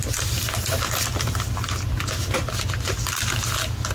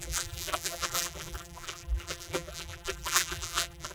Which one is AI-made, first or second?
second